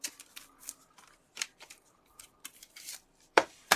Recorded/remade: remade